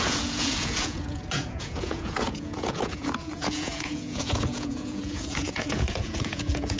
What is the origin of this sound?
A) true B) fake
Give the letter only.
B